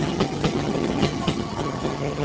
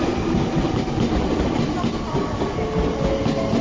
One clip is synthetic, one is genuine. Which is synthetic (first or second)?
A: first